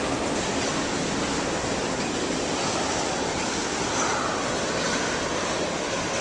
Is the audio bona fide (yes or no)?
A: yes